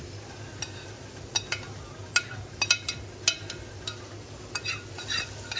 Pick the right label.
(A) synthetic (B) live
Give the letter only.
B